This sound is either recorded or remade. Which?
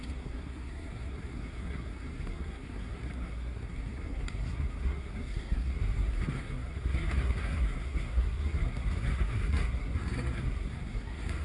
remade